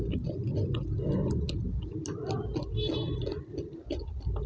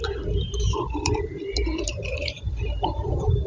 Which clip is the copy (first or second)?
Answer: second